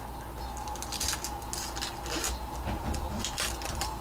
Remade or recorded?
recorded